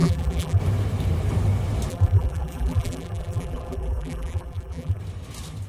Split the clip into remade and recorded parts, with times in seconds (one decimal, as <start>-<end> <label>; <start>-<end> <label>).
0.0-0.6 remade; 0.6-1.9 recorded; 1.9-5.0 remade; 5.0-5.7 recorded